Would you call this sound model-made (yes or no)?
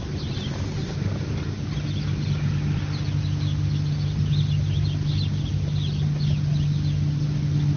no